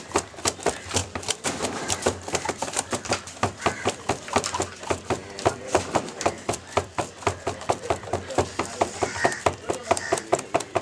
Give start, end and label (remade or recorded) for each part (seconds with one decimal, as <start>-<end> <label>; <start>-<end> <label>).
0.0-10.8 remade